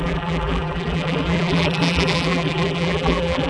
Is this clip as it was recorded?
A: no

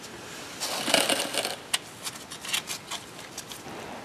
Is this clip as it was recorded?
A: yes